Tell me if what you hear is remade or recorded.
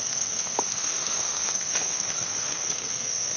remade